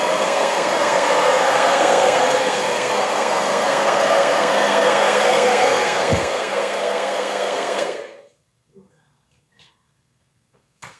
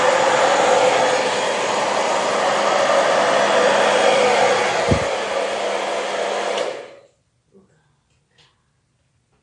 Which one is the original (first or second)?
second